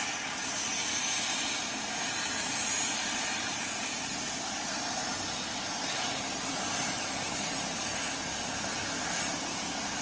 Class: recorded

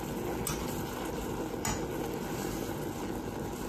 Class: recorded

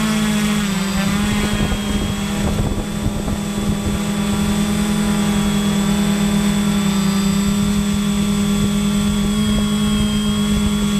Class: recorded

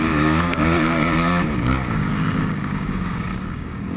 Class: remade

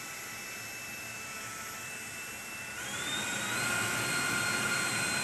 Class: recorded